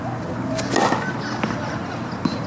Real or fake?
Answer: real